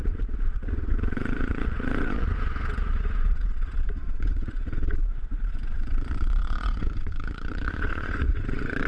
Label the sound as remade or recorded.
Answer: remade